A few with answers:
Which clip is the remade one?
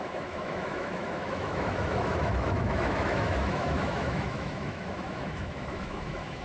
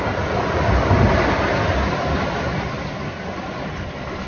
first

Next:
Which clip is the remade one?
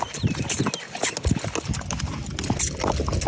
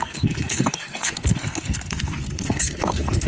second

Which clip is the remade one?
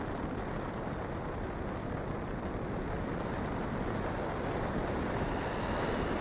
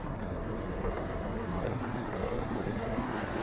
second